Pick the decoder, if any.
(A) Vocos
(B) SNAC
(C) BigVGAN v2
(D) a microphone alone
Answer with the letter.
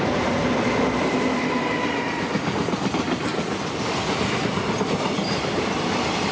D